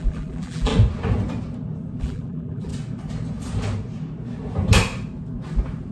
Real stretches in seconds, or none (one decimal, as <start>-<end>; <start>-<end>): 0.7-2.0; 2.7-5.9